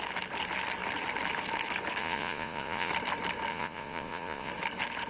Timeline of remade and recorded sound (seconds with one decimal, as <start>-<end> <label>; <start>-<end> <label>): 0.0-2.0 recorded; 2.0-2.9 remade; 2.9-3.5 recorded; 3.5-4.5 remade; 4.5-5.1 recorded